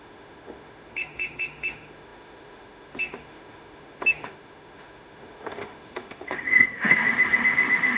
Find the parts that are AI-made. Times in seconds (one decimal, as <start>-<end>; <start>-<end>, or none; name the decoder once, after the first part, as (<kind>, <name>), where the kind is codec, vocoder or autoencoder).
0.0-8.0 (autoencoder, DAC-VAE)